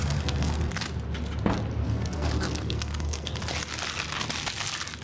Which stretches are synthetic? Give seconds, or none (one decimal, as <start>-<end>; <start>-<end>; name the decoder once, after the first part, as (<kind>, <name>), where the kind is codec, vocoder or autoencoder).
0.0-0.7 (codec, SNAC); 1.8-3.3

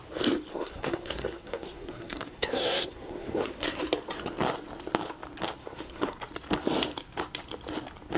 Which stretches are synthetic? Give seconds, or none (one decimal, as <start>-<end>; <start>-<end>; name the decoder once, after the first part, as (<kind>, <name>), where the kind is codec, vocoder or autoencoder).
0.5-3.8 (codec, SNAC); 5.6-6.2

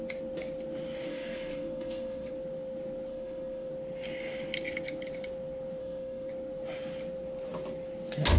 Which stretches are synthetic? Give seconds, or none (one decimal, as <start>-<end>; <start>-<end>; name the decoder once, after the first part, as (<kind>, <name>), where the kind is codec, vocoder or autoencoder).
1.1-2.3 (codec, SNAC); 3.1-3.7; 5.8-6.3

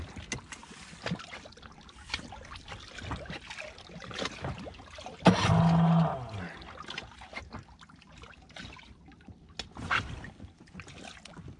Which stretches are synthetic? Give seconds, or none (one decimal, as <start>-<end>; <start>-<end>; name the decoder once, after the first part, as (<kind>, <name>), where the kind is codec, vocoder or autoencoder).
none

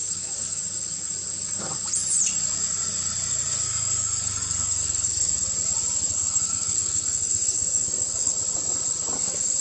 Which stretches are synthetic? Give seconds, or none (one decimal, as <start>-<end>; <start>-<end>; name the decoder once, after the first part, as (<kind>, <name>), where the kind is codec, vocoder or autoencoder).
0.0-0.6 (codec, SNAC); 3.5-5.3; 6.1-8.3; 9.2-9.6

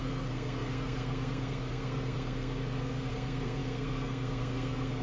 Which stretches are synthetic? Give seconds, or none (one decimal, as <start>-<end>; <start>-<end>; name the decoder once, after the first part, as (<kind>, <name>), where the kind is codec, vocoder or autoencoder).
0.0-5.0 (codec, SNAC)